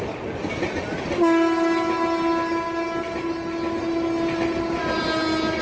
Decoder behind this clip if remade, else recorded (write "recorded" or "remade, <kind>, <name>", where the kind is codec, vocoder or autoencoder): recorded